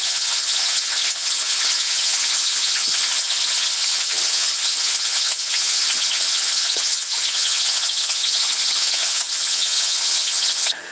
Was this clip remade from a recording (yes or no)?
yes